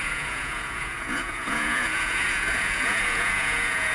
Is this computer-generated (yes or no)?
yes